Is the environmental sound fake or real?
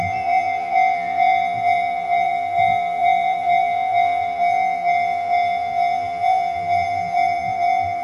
fake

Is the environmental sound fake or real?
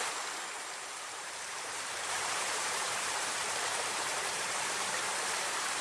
fake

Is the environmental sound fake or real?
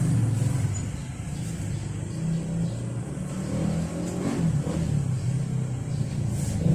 real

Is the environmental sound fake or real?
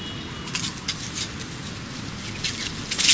real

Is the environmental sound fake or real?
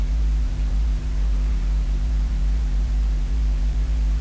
fake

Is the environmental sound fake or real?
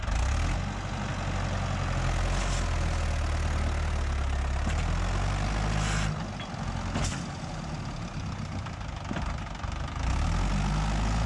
real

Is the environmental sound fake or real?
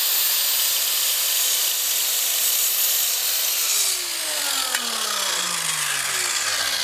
real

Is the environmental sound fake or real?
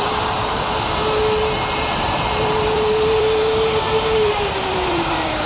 fake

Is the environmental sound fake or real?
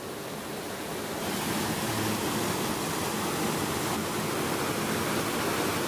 real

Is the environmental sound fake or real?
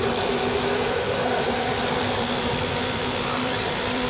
fake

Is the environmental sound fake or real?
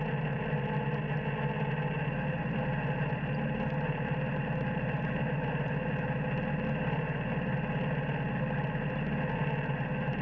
real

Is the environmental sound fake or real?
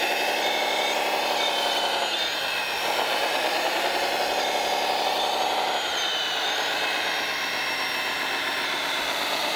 fake